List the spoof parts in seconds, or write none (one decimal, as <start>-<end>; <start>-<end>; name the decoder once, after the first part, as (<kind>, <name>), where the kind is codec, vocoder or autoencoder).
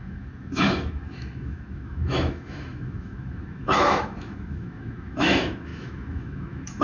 0.0-6.8 (autoencoder, DAC-VAE)